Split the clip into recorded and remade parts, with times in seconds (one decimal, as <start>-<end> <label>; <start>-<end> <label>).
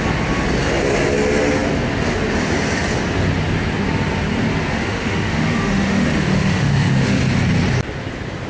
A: 0.0-4.7 recorded; 4.7-7.2 remade; 7.2-8.5 recorded